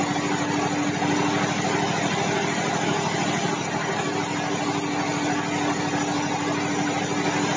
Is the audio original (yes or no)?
yes